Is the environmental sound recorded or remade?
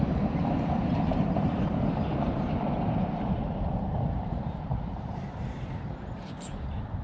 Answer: remade